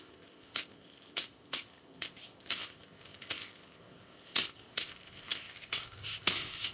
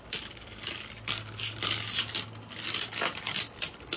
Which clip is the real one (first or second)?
second